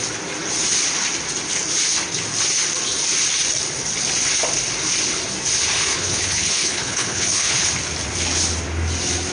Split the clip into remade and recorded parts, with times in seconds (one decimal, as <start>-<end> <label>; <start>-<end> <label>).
0.0-5.9 recorded; 5.9-7.7 remade; 7.7-9.3 recorded